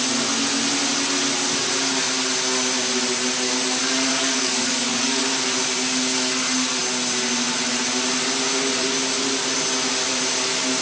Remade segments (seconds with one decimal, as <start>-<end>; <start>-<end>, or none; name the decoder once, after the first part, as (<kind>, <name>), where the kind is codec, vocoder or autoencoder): 4.1-5.2 (codec, DAC)